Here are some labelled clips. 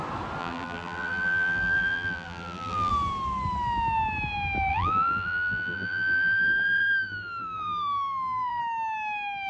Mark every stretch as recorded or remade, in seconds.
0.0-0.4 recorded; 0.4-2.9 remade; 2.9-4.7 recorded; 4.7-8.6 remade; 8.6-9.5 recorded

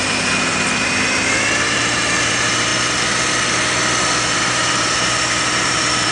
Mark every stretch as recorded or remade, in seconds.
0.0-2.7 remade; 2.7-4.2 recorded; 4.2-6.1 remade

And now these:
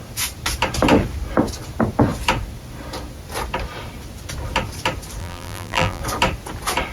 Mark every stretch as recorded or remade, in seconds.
0.0-5.2 recorded; 5.2-6.0 remade; 6.0-6.9 recorded